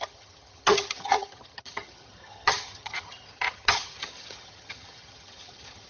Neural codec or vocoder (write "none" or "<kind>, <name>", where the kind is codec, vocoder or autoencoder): vocoder, HiFi-GAN